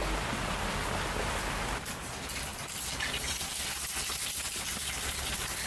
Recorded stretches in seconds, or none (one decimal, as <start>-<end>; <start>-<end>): 0.0-5.7